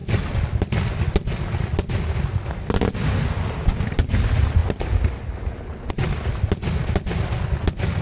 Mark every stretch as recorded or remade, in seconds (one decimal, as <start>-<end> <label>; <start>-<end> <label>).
0.0-8.0 recorded